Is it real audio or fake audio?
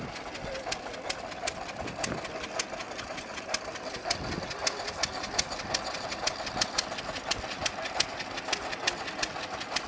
real